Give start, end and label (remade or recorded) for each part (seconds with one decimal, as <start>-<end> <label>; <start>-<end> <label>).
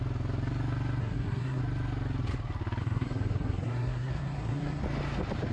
0.0-1.0 recorded; 1.0-1.6 remade; 1.6-2.8 recorded; 2.8-4.8 remade; 4.8-5.5 recorded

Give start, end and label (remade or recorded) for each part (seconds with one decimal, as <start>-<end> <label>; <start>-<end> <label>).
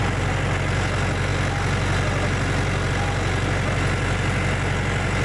0.0-5.2 recorded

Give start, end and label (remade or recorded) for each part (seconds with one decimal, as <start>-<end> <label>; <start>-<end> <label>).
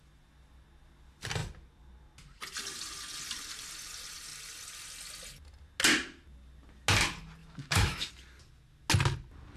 0.0-7.4 recorded; 7.4-8.1 remade; 8.1-9.6 recorded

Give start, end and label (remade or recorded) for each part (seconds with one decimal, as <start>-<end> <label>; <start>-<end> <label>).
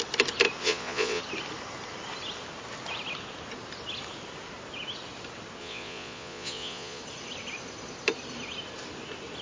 0.0-0.6 recorded; 0.6-1.2 remade; 1.2-5.6 recorded; 5.6-7.0 remade; 7.0-9.4 recorded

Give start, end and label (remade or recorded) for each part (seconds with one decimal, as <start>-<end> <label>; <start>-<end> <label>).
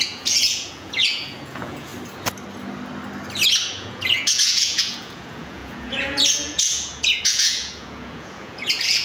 0.0-1.9 remade; 1.9-3.7 recorded; 3.7-9.0 remade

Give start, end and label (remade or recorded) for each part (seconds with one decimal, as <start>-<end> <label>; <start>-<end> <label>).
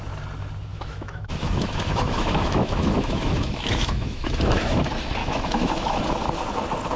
0.0-0.7 recorded; 0.7-4.8 remade; 4.8-5.2 recorded; 5.2-6.0 remade; 6.0-7.0 recorded